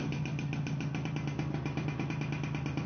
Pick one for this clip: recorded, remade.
recorded